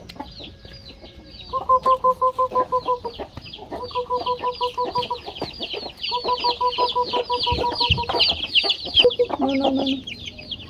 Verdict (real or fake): real